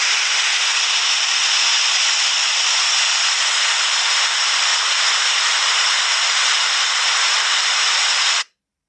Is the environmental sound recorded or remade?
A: recorded